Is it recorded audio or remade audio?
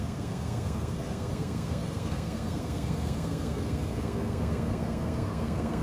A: remade